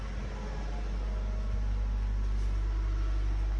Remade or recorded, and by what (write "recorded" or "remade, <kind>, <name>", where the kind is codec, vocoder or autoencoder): recorded